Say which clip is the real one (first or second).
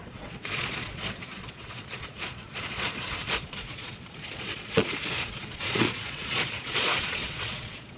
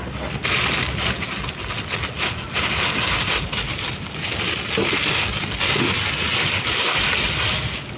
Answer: second